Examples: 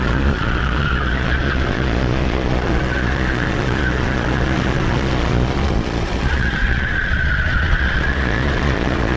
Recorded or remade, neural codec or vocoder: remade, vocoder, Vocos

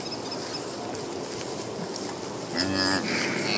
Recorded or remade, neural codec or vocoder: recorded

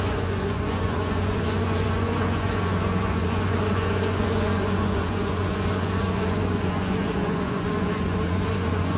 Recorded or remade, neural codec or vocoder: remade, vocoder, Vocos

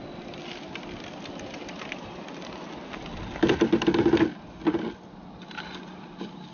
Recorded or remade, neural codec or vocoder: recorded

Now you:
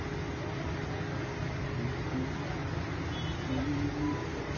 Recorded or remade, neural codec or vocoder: recorded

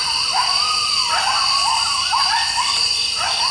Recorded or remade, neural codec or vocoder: recorded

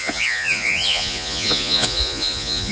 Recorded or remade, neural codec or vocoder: remade, vocoder, Vocos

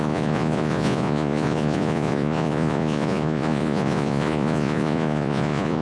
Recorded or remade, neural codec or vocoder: remade, vocoder, Vocos